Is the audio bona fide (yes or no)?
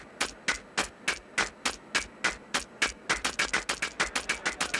yes